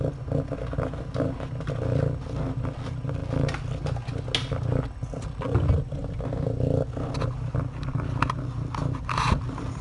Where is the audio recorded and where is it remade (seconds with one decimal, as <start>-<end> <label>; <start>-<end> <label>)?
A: 0.0-9.8 recorded